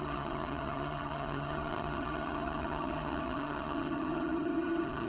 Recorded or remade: remade